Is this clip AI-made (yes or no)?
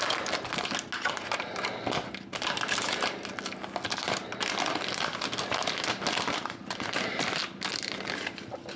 no